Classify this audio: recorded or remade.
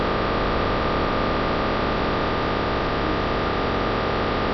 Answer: recorded